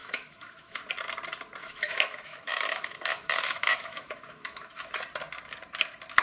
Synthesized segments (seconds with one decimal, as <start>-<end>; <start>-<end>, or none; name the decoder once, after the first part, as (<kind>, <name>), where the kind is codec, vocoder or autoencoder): 0.0-0.8 (autoencoder, DAC-VAE); 1.6-4.8